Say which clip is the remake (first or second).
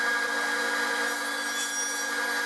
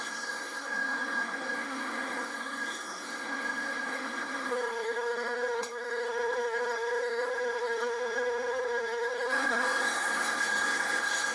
second